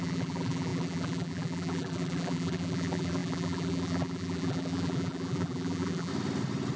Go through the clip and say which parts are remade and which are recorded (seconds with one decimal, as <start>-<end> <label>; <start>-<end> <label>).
0.0-6.1 remade; 6.1-6.8 recorded